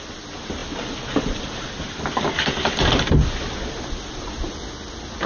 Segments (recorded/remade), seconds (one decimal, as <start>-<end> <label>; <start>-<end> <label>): 0.0-5.3 recorded